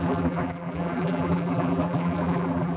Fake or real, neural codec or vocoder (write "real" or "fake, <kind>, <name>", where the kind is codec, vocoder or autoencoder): fake, vocoder, BigVGAN v2